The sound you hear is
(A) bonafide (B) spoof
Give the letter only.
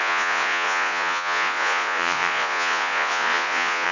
B